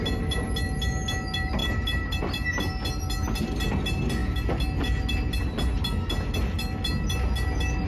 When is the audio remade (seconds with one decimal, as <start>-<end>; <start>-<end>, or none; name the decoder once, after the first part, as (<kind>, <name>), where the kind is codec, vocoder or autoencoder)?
1.6-2.2 (vocoder, BigVGAN v2)